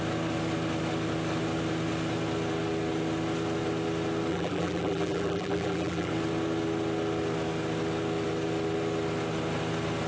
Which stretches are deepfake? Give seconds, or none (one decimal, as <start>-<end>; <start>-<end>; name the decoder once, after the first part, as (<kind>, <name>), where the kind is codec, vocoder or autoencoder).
4.3-6.1 (vocoder, BigVGAN v2)